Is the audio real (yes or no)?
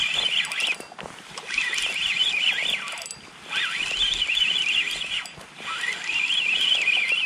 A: yes